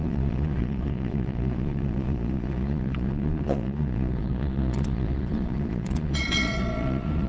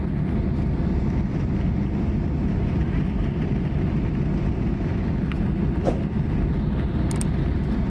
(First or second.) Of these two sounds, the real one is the second